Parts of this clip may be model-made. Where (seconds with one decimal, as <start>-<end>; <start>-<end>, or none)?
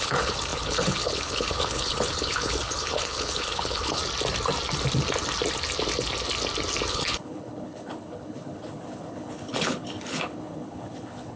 0.0-4.0; 6.9-11.4